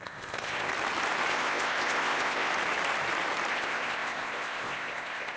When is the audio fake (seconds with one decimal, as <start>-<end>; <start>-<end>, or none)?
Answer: 0.0-0.7; 1.3-2.5; 3.5-5.4